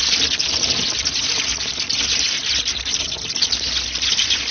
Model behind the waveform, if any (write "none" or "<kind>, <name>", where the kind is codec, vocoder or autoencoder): vocoder, BigVGAN v2